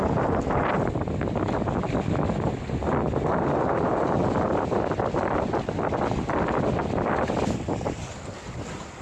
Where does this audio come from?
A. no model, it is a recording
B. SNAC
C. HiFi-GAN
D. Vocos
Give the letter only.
A